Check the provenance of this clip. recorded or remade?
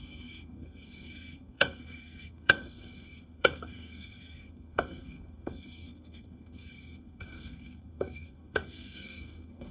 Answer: remade